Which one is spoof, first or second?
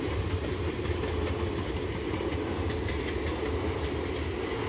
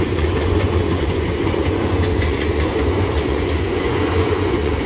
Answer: second